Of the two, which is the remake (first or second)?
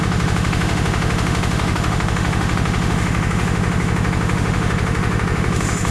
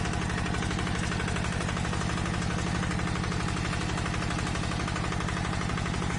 first